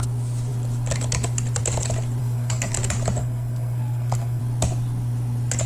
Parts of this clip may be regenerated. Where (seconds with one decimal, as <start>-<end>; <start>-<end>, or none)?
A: 2.2-2.7; 3.2-4.4

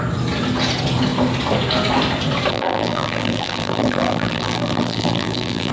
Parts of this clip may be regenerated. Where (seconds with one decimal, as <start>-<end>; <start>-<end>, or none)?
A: 2.5-5.7